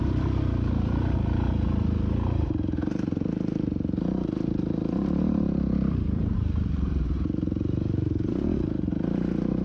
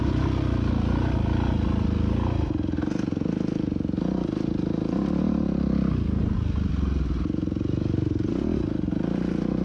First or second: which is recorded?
second